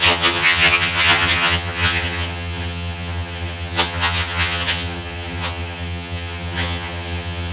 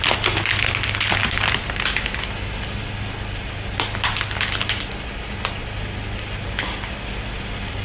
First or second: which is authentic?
second